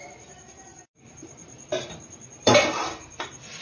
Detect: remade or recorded remade